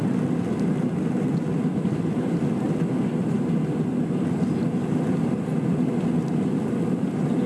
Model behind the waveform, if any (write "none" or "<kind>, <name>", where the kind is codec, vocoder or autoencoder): none